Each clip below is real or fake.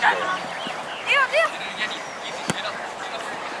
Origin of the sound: real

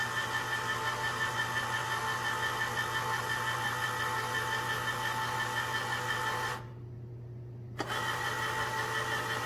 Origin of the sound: real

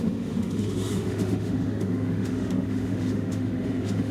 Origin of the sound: fake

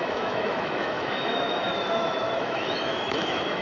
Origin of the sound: fake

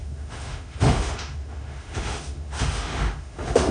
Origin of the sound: fake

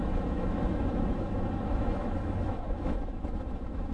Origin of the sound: fake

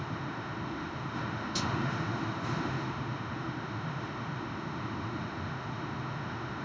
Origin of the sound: fake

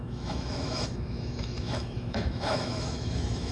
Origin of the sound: fake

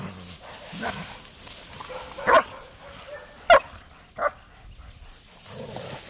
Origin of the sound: real